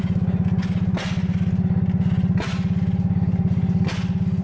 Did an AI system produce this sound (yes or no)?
no